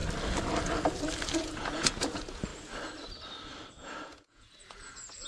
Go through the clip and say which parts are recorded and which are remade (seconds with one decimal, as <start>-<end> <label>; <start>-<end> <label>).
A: 0.0-1.3 recorded; 1.3-2.5 remade; 2.5-3.7 recorded; 3.7-5.3 remade